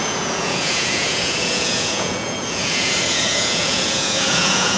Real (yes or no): no